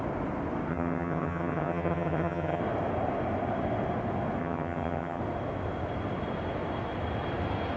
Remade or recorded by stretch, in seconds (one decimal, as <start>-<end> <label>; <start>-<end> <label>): 0.0-0.7 recorded; 0.7-2.6 remade; 2.6-4.4 recorded; 4.4-5.2 remade; 5.2-7.8 recorded